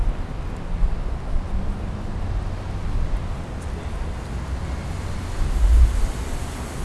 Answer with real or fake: real